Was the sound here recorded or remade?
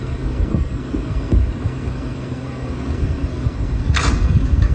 remade